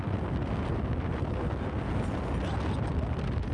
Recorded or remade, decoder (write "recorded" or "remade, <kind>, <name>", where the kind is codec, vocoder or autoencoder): recorded